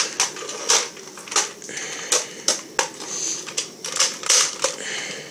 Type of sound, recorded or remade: recorded